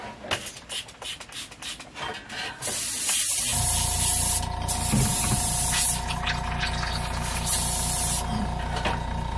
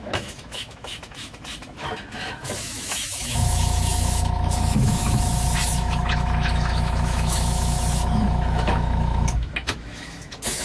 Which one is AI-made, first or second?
second